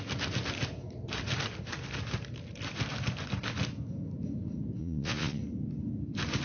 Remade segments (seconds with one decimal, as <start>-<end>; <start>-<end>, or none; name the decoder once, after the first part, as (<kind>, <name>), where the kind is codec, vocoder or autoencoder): 4.8-5.4 (vocoder, Vocos)